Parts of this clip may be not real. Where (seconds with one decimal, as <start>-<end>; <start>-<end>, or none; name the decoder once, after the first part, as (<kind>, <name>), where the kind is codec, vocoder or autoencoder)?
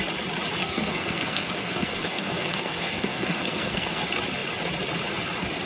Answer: 0.6-4.0 (codec, SNAC)